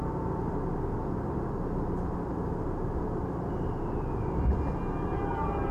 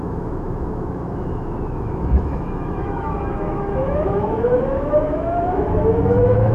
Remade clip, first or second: second